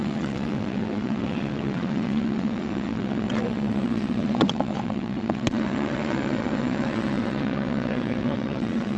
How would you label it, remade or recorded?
remade